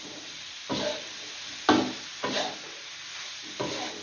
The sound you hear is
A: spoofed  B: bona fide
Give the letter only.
B